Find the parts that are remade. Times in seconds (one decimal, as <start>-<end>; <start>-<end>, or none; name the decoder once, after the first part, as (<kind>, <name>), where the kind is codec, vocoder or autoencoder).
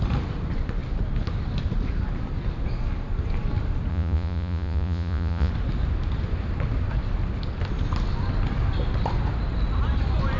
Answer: 3.9-5.5 (vocoder, Vocos)